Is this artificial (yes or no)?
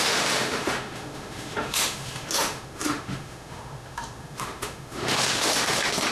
yes